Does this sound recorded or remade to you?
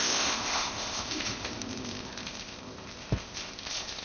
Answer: remade